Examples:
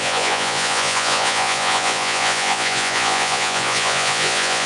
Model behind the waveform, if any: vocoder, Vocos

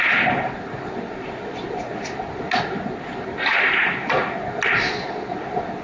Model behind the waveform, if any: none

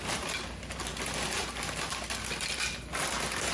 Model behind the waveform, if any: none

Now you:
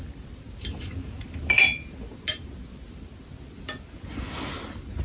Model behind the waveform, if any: none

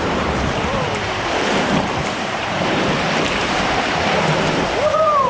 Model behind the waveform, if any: vocoder, BigVGAN v2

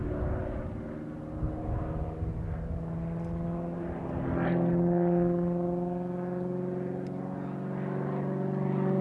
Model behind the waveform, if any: none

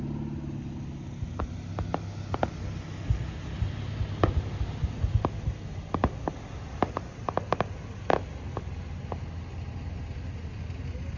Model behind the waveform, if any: none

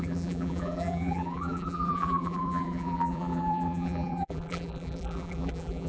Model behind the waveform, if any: vocoder, BigVGAN v2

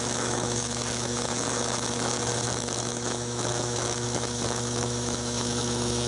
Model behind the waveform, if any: autoencoder, DAC-VAE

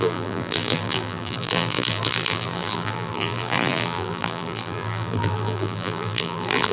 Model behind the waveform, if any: vocoder, BigVGAN v2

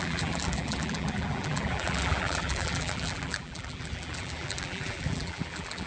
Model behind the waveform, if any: vocoder, BigVGAN v2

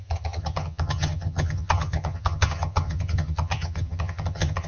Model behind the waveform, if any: vocoder, HiFi-GAN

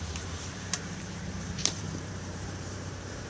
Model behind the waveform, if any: vocoder, BigVGAN v2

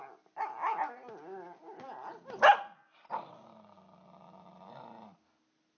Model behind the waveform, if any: none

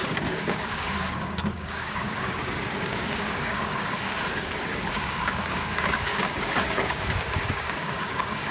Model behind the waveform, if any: codec, DAC